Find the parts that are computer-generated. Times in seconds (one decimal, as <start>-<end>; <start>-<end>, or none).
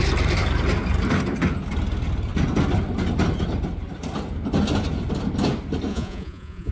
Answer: 5.9-6.7